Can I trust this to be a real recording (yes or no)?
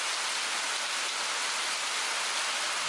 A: yes